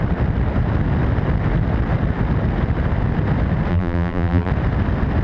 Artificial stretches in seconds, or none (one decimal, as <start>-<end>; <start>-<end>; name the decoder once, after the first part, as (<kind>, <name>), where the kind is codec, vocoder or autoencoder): 3.7-4.5 (vocoder, BigVGAN v2)